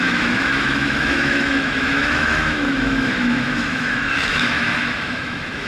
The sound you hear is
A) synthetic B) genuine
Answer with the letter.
A